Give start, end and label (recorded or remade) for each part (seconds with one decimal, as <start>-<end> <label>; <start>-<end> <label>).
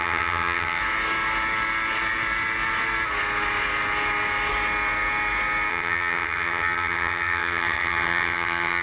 0.0-0.8 remade; 0.8-5.7 recorded; 5.7-8.8 remade